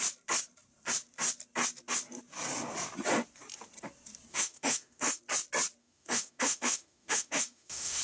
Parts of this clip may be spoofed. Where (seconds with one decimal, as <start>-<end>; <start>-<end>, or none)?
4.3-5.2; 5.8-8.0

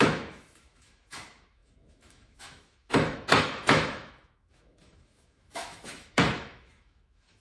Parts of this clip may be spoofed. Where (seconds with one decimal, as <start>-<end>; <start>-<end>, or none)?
0.0-7.4

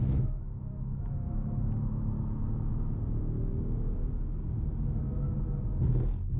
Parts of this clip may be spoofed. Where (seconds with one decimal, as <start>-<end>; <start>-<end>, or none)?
0.0-2.6